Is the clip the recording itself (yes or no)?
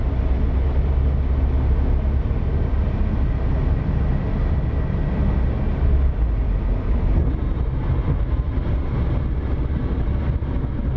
yes